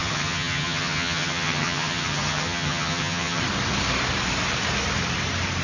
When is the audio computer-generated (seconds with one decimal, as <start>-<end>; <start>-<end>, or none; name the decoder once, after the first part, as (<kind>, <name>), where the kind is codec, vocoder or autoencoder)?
0.0-3.4 (vocoder, HiFi-GAN)